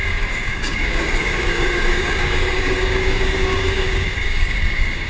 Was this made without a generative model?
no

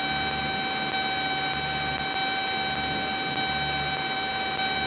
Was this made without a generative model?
yes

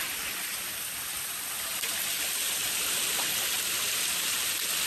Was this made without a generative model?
yes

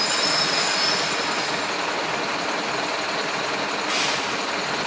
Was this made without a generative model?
yes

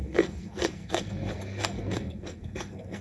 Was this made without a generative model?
no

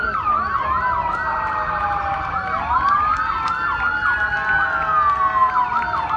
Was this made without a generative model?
yes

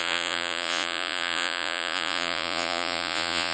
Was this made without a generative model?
no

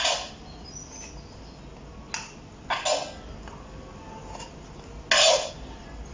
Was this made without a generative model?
yes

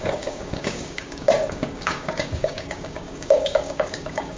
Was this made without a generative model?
no